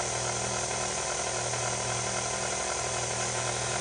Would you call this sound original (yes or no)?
yes